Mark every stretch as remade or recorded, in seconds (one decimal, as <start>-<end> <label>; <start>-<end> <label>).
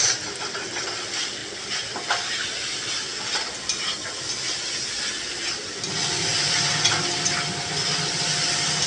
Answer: 0.0-1.4 remade; 1.4-5.7 recorded; 5.7-8.9 remade